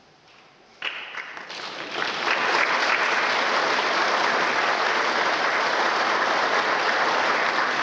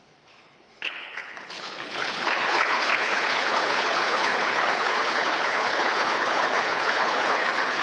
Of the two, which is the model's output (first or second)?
second